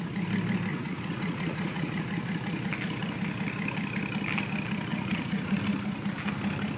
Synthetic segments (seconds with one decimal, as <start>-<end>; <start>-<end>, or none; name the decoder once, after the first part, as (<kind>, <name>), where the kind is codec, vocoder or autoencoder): 0.7-2.0 (vocoder, Vocos); 4.9-5.6